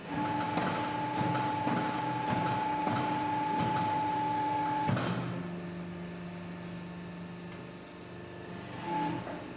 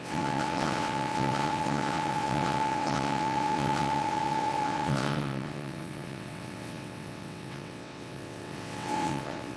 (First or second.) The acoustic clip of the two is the first